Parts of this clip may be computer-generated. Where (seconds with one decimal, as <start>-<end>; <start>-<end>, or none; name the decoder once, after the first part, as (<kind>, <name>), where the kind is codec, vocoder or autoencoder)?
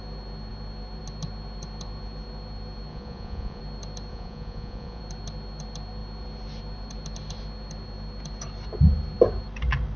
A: 2.9-3.6 (vocoder, Vocos); 4.1-5.0